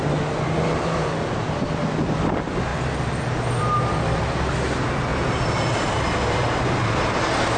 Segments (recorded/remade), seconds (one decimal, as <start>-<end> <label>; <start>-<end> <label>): 0.0-7.6 recorded